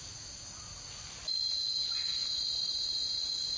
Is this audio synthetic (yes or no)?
no